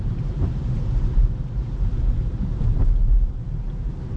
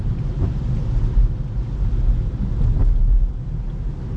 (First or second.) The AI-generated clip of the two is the first